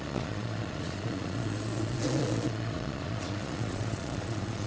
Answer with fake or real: fake